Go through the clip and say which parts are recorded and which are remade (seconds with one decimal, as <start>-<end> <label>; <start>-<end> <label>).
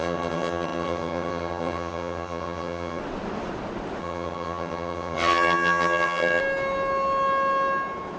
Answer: 0.0-3.0 remade; 3.0-4.0 recorded; 4.0-6.4 remade; 6.4-8.2 recorded